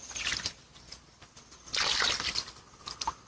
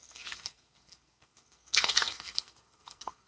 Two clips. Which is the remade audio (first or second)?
second